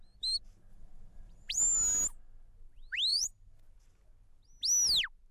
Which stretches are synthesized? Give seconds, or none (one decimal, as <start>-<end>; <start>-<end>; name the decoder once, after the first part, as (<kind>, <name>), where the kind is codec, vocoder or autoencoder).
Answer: 0.7-1.6 (vocoder, BigVGAN v2); 3.1-3.6